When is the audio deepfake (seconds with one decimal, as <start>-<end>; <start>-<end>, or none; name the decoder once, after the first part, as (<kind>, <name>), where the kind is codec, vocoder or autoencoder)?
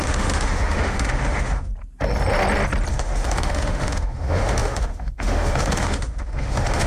0.0-1.7 (autoencoder, DAC-VAE); 2.9-6.9